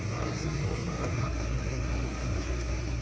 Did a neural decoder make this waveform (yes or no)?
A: yes